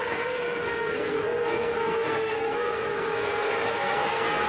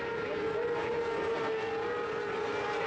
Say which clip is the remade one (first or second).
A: first